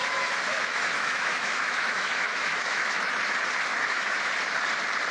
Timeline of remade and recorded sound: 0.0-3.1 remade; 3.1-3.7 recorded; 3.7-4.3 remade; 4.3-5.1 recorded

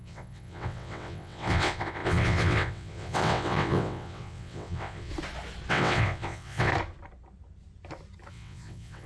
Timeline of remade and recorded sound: 0.0-5.1 remade; 5.1-5.7 recorded; 5.7-6.7 remade; 6.7-8.3 recorded; 8.3-9.1 remade